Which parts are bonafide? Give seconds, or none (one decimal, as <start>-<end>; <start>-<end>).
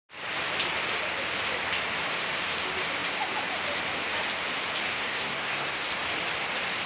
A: 0.0-4.9; 5.8-6.9